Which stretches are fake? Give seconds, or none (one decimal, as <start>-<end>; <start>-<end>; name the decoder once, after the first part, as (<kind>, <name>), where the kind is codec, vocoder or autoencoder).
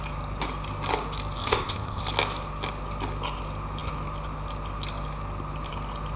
1.4-2.0 (codec, ZipCodec)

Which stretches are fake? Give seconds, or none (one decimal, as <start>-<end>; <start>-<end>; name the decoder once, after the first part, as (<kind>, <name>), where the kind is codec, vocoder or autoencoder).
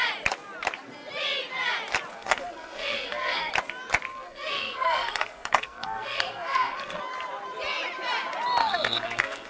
2.1-3.5 (codec, SNAC); 4.1-7.0; 8.6-9.5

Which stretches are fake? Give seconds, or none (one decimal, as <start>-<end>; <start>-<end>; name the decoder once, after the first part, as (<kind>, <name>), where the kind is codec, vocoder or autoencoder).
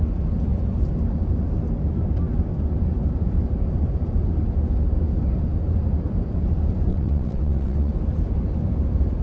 6.9-7.9 (vocoder, WaveNeXt)